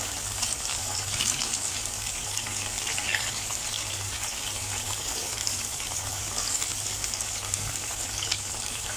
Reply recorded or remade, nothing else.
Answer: remade